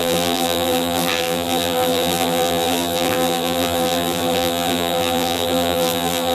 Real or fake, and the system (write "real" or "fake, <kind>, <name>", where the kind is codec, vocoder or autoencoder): fake, vocoder, BigVGAN v2